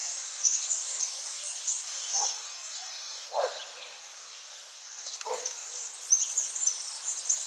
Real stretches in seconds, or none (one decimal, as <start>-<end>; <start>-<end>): 3.3-4.0; 5.7-7.5